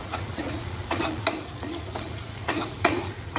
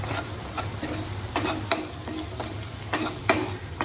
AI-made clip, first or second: first